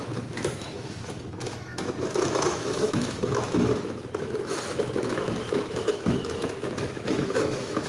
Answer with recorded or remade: remade